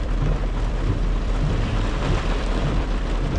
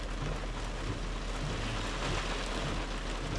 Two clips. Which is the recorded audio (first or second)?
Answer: second